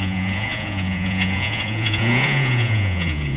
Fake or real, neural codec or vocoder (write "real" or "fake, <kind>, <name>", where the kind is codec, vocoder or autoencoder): fake, vocoder, Vocos